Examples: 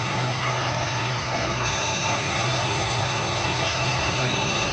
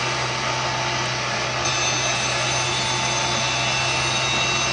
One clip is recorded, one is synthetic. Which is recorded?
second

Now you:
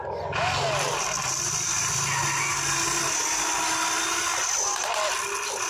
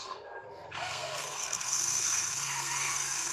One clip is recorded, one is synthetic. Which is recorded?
first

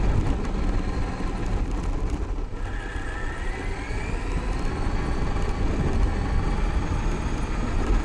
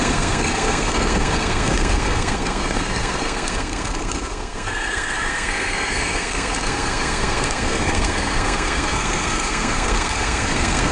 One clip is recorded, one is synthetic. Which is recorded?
first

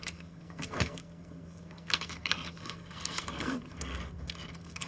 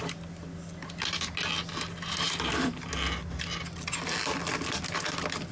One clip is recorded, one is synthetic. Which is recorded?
second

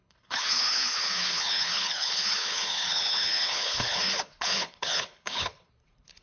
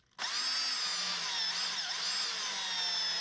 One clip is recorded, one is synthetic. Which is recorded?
second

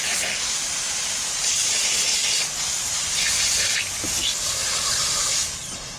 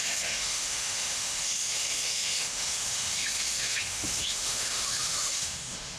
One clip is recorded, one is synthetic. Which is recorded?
first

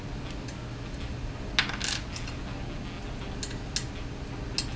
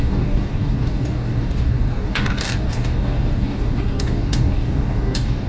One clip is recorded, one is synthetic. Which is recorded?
first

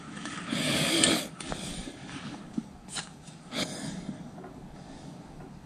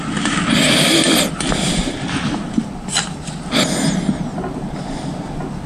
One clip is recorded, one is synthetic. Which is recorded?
second